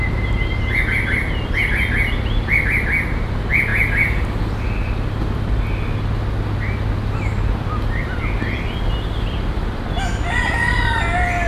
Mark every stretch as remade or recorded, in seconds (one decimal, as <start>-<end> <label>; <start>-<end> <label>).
0.0-11.5 recorded